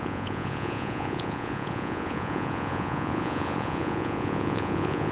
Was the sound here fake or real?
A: fake